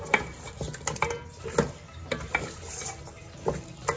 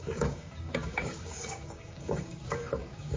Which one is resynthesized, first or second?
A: second